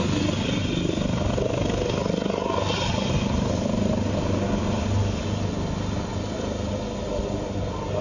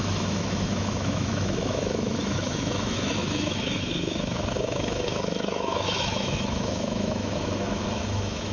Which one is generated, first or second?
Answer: second